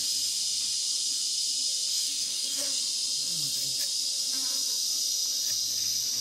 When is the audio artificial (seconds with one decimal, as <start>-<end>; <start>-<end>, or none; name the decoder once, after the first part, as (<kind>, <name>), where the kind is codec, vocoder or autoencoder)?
1.9-2.8 (codec, DAC)